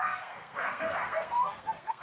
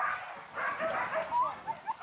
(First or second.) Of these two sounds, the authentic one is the second